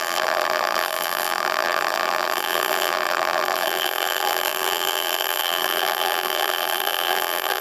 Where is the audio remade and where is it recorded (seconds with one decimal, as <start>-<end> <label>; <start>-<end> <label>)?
0.0-7.6 remade